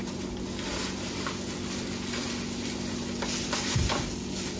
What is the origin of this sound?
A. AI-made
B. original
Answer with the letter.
B